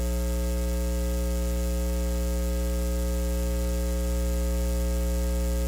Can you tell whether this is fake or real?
real